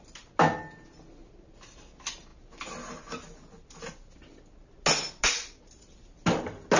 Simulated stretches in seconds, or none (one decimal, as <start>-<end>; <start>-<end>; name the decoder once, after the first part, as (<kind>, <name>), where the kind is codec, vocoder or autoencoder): none